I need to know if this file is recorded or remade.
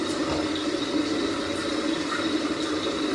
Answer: recorded